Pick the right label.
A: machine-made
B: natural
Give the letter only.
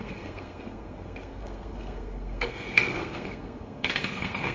A